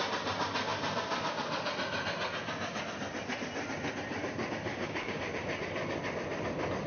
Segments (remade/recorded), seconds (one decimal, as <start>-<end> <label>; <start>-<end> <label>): 0.0-4.7 recorded; 4.7-5.2 remade; 5.2-6.9 recorded